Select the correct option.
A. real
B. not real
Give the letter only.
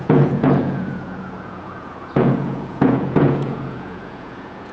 B